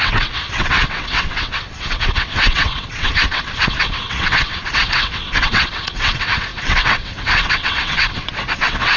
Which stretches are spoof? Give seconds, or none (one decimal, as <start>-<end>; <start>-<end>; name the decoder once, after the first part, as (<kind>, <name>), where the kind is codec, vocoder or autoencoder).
0.0-9.0 (vocoder, WaveNeXt)